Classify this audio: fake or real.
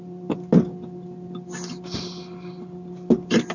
real